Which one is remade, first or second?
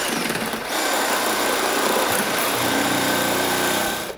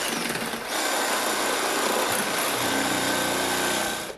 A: first